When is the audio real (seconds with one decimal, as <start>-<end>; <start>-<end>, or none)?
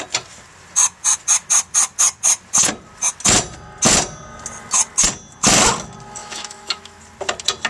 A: 0.0-6.2; 7.0-7.7